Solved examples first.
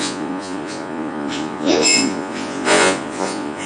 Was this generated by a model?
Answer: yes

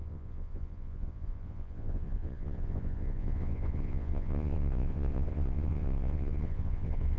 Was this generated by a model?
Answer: yes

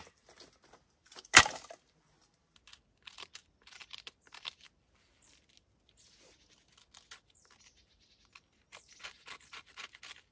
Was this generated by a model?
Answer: no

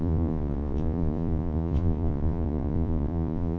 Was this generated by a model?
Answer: yes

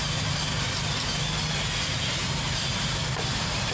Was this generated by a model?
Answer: no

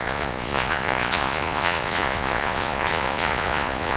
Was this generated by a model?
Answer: yes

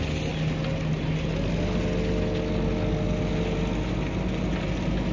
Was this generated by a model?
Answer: no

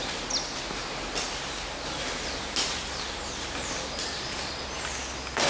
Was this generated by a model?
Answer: no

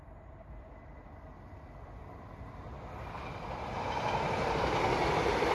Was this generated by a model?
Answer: no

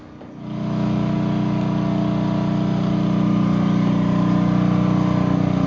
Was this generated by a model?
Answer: no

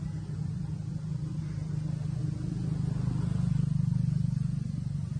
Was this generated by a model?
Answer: no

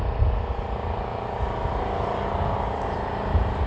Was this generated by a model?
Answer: no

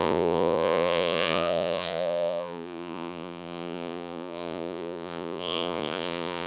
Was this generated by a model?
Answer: yes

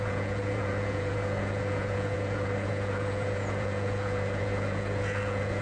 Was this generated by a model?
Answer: yes